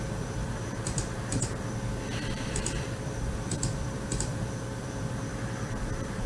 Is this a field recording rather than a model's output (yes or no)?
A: no